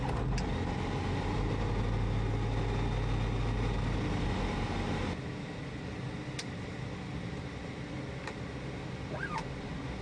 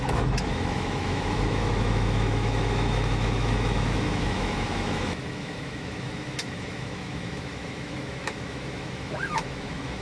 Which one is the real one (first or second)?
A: first